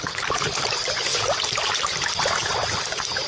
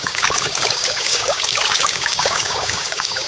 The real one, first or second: first